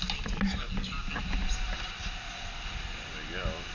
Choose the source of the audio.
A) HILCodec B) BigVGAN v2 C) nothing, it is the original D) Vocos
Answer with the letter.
C